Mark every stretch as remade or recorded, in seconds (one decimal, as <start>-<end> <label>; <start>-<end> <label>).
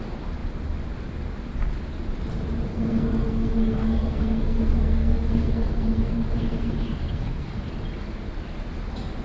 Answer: 0.0-2.7 recorded; 2.7-7.7 remade; 7.7-9.2 recorded